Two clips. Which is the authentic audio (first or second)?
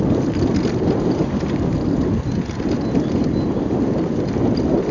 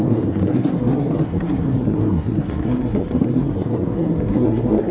first